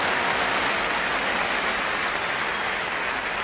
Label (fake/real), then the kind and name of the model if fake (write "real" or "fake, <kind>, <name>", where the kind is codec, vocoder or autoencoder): real